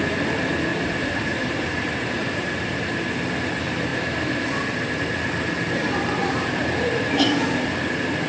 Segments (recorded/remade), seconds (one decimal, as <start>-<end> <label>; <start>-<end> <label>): 0.0-0.7 recorded; 0.7-2.9 remade; 2.9-6.2 recorded; 6.2-7.8 remade; 7.8-8.3 recorded